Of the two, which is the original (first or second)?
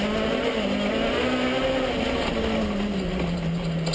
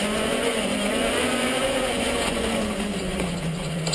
first